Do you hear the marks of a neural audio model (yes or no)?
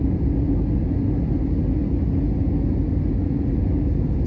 no